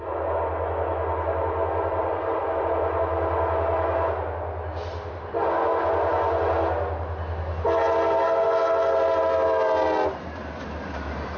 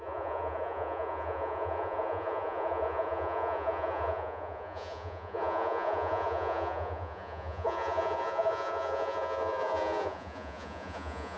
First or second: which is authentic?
first